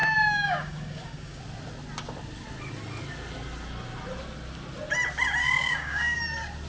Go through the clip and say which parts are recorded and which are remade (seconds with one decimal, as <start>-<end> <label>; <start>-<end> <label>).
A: 0.0-1.4 remade; 1.4-5.4 recorded; 5.4-6.2 remade; 6.2-6.7 recorded